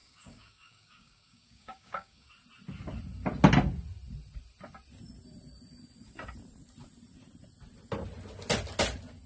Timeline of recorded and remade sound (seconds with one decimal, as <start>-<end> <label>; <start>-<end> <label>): 0.0-2.3 remade; 2.3-9.3 recorded